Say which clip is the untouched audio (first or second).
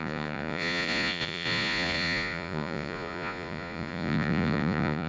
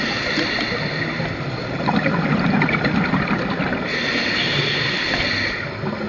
second